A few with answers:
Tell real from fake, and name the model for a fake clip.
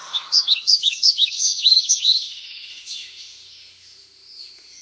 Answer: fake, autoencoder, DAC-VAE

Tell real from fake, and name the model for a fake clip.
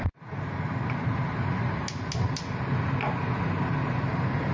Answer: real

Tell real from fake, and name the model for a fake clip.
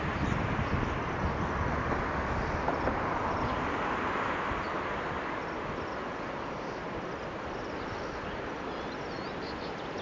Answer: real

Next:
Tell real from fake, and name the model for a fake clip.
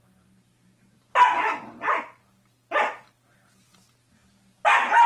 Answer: real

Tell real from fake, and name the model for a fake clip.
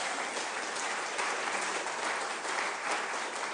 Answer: real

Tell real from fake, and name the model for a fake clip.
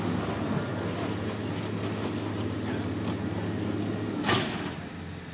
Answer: real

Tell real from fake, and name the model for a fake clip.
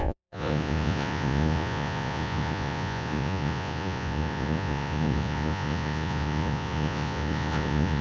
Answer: fake, vocoder, Vocos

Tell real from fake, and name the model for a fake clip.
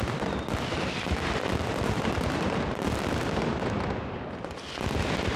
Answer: real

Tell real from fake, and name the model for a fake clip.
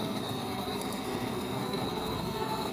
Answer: fake, codec, SNAC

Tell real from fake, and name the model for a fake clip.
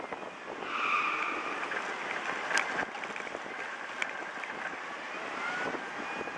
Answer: real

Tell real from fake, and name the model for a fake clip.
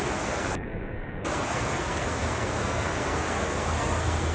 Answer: fake, codec, SNAC